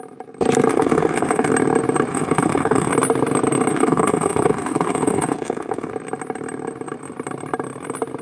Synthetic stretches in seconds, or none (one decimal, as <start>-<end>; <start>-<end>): 0.7-1.5; 2.1-2.9; 3.7-5.9